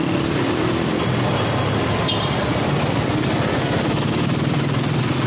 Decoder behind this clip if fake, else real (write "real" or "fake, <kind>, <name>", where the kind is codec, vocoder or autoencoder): real